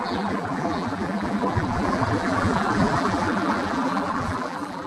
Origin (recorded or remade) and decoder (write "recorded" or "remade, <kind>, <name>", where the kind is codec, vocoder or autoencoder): remade, vocoder, BigVGAN v2